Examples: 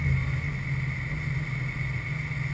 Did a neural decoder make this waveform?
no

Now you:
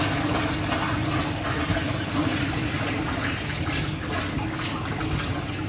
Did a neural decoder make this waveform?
no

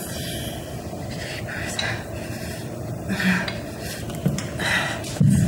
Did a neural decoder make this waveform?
no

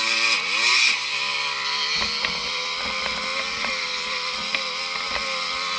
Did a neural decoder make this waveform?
no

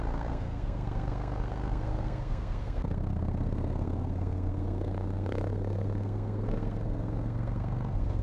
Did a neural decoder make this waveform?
yes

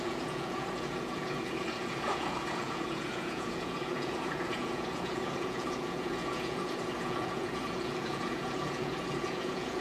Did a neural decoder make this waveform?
yes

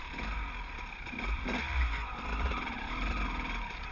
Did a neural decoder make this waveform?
yes